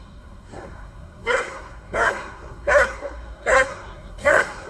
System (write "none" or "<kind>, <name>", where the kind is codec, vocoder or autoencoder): codec, SNAC